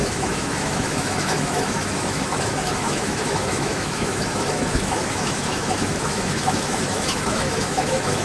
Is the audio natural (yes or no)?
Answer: no